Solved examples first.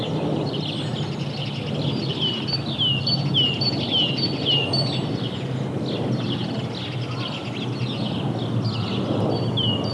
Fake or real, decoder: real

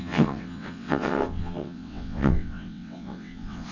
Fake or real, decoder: fake, vocoder, WaveNeXt